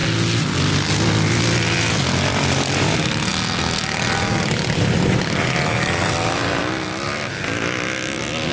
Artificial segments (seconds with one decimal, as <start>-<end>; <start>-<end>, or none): 1.4-3.3; 4.4-6.6; 7.3-8.5